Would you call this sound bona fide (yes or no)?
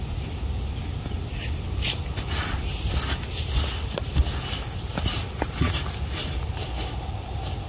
yes